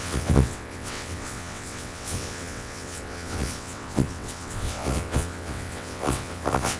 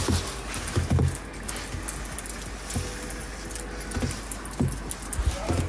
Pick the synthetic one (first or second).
first